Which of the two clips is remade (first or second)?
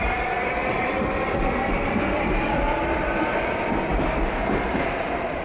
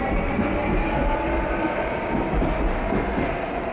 first